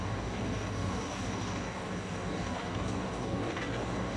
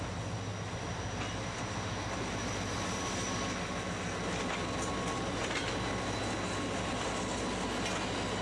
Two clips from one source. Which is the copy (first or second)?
first